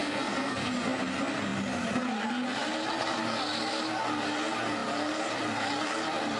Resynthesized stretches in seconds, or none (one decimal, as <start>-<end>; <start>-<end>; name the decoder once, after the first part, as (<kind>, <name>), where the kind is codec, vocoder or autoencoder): 0.0-0.7 (codec, SNAC)